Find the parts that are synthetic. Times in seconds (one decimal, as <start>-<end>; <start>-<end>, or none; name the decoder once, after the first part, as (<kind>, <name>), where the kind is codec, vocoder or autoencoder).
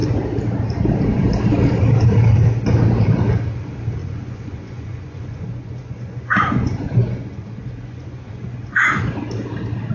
4.0-9.0 (vocoder, Vocos)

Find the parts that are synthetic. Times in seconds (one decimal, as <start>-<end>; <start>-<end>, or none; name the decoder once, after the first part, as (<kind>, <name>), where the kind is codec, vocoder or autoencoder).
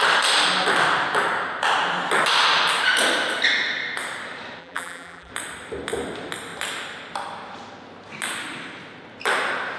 4.6-5.3 (vocoder, BigVGAN v2)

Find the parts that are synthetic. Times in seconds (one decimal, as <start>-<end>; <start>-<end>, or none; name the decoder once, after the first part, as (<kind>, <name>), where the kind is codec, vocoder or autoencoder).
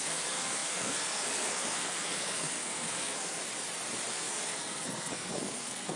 0.0-3.4 (codec, SNAC); 4.1-6.0